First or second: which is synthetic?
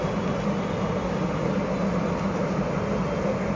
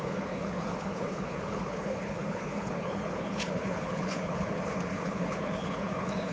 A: second